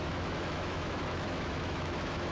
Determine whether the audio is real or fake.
fake